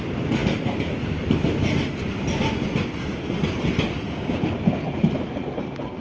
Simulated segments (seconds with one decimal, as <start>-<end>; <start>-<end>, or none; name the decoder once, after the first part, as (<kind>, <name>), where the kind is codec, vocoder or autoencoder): 0.4-1.5 (vocoder, BigVGAN v2)